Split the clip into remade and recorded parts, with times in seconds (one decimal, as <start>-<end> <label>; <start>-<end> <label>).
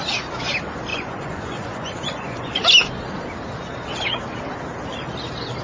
0.0-0.9 recorded; 0.9-2.5 remade; 2.5-5.6 recorded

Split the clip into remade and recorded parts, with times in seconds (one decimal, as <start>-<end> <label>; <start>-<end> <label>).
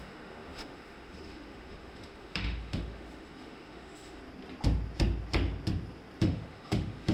0.0-4.2 remade; 4.2-6.2 recorded; 6.2-7.1 remade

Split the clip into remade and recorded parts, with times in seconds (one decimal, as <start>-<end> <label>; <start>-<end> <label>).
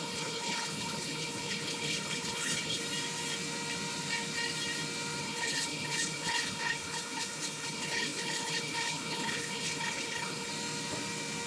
0.0-2.8 remade; 2.8-5.2 recorded; 5.2-10.5 remade; 10.5-11.5 recorded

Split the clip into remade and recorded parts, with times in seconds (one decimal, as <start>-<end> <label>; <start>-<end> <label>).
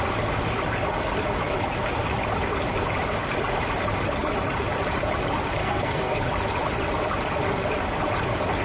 0.0-5.6 recorded; 5.6-6.2 remade; 6.2-8.6 recorded